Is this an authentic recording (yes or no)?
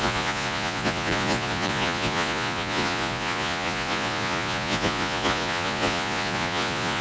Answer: no